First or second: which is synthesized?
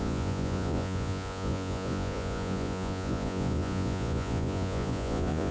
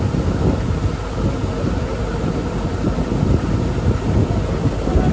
first